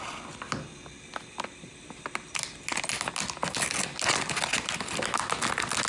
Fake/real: real